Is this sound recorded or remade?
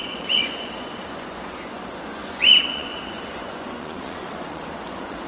remade